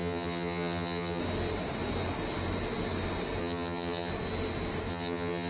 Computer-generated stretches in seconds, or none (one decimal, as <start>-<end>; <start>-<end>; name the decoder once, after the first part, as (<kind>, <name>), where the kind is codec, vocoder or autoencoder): 0.0-1.2 (vocoder, HiFi-GAN); 3.4-4.1; 4.9-5.5